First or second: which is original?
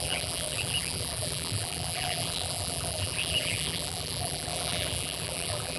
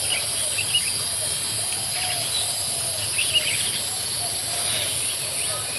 second